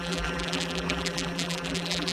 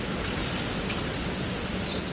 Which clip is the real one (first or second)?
second